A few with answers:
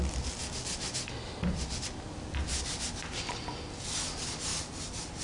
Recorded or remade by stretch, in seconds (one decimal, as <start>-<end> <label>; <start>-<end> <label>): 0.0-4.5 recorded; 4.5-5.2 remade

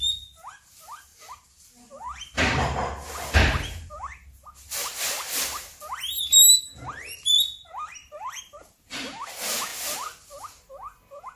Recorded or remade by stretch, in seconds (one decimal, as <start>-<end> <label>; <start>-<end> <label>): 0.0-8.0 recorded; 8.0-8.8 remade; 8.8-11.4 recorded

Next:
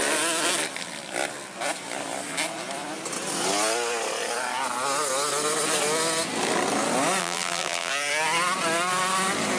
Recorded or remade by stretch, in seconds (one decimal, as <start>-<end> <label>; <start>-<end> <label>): 0.0-7.2 recorded; 7.2-7.9 remade; 7.9-9.6 recorded

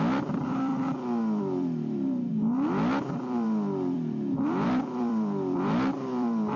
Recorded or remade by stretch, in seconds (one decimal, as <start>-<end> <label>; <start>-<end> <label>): 0.0-0.7 remade; 0.7-1.4 recorded; 1.4-2.3 remade; 2.3-3.1 recorded; 3.1-6.6 remade